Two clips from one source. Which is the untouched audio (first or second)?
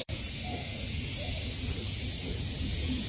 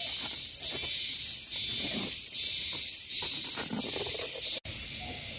second